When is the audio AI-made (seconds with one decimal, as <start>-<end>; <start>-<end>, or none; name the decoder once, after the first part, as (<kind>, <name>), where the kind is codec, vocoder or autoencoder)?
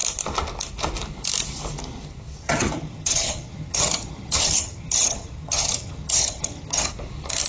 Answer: 2.4-6.9 (vocoder, HiFi-GAN)